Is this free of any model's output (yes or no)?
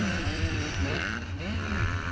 no